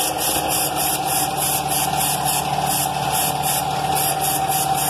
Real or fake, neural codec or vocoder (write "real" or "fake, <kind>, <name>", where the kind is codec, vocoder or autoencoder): real